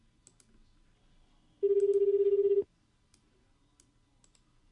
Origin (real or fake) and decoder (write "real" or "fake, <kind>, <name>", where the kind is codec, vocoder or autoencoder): real